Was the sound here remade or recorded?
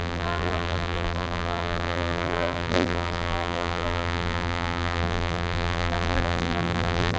remade